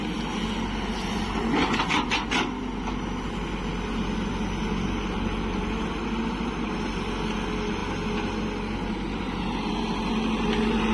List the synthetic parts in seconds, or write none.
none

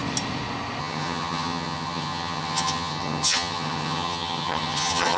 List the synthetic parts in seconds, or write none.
0.8-5.2 (vocoder, HiFi-GAN)

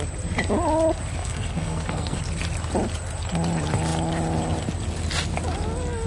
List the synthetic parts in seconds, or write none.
1.2-2.2 (codec, SNAC)

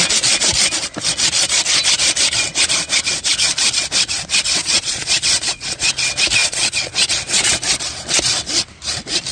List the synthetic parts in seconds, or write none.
4.6-5.9 (vocoder, Vocos); 6.4-7.5

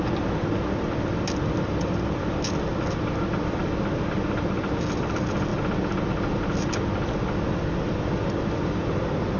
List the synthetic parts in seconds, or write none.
none